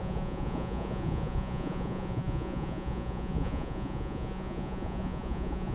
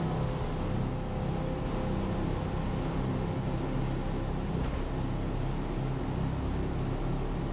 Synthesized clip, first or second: first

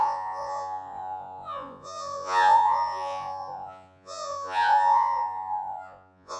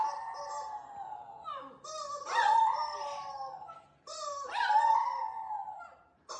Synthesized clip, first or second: first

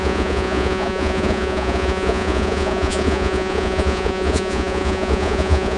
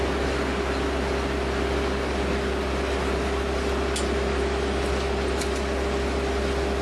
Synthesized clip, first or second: first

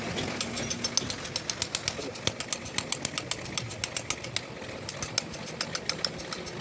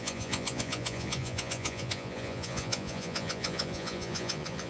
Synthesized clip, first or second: second